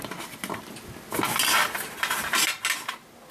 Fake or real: real